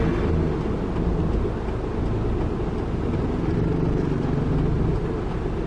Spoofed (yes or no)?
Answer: no